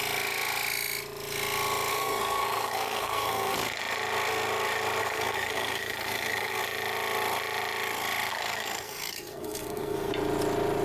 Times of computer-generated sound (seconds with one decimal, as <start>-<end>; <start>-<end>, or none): 1.9-3.8; 5.0-6.6; 8.3-10.1